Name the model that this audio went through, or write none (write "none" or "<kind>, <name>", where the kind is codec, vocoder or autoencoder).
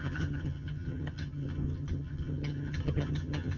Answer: vocoder, HiFi-GAN